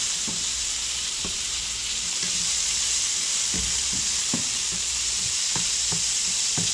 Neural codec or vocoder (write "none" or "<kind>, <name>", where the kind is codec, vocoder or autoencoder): vocoder, BigVGAN v2